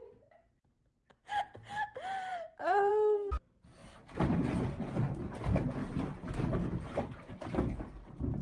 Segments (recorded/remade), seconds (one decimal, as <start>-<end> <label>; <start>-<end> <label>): 0.0-2.3 recorded; 2.3-2.9 remade; 2.9-3.8 recorded; 3.8-4.4 remade; 4.4-5.8 recorded; 5.8-7.4 remade; 7.4-8.4 recorded